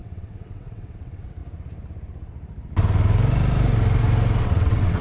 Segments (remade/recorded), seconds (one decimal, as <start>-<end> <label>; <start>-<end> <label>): 0.0-1.4 remade; 1.4-4.4 recorded; 4.4-5.0 remade

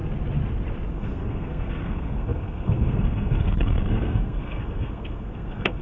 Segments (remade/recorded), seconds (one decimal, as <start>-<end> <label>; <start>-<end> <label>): 0.0-0.9 recorded; 0.9-5.8 remade